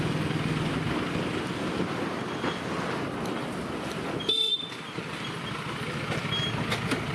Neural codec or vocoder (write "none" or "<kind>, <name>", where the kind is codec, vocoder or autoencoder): none